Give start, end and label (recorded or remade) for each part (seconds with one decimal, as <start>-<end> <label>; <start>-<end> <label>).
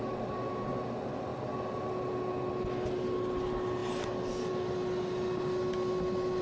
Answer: 0.0-6.4 recorded